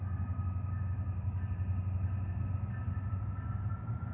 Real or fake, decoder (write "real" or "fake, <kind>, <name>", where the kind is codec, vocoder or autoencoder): real